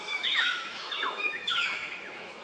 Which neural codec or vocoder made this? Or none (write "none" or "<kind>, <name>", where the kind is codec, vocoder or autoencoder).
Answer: autoencoder, DAC-VAE